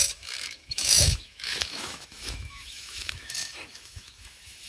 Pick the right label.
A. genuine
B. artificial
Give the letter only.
B